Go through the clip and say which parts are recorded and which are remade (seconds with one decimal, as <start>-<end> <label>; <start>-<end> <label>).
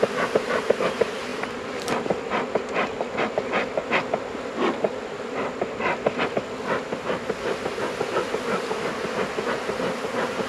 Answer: 0.0-10.5 recorded